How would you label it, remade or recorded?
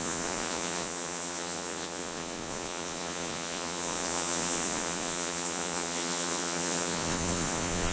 remade